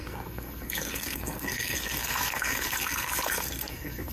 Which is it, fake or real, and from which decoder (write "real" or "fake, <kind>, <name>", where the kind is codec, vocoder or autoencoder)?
fake, codec, SNAC